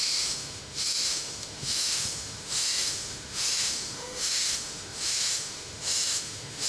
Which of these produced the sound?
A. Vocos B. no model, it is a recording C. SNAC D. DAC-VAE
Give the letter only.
D